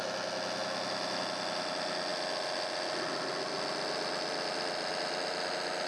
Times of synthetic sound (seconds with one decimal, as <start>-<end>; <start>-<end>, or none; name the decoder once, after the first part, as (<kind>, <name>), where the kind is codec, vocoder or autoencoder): none